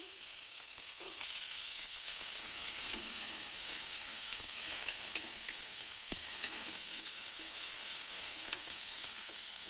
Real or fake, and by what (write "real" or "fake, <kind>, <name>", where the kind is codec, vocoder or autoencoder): fake, codec, SNAC